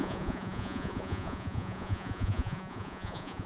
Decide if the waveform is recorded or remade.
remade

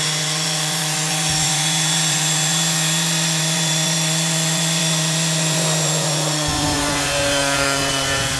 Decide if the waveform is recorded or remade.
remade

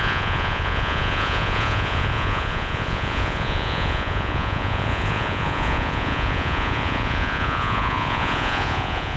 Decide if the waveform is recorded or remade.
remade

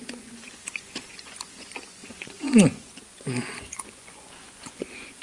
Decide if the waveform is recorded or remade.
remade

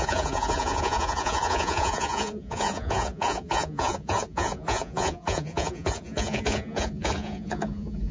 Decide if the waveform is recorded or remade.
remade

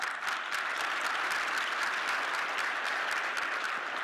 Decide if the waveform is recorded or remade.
recorded